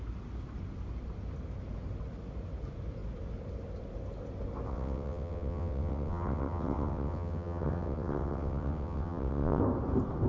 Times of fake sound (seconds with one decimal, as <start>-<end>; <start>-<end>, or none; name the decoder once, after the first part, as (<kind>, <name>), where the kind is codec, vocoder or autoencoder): 4.7-9.6 (vocoder, WaveNeXt)